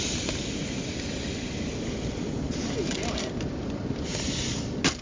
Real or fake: real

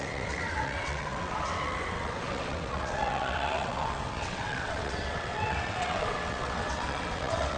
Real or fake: fake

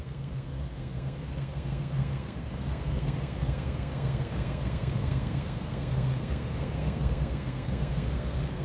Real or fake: fake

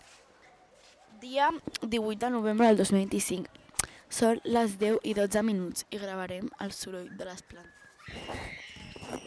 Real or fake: real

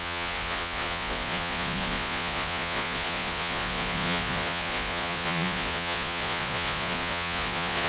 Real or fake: fake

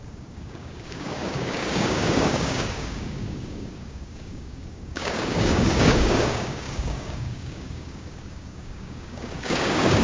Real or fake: fake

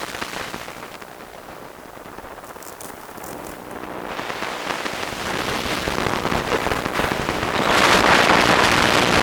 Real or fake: real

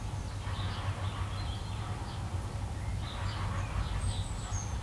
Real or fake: real